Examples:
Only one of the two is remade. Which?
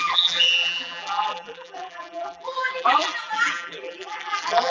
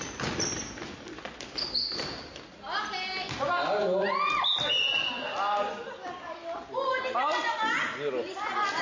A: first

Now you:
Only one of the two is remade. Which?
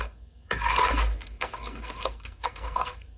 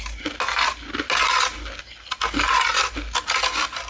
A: first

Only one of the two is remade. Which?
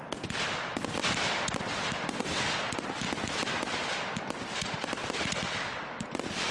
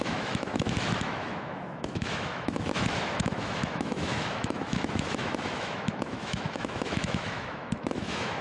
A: second